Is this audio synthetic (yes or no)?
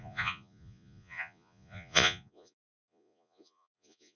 yes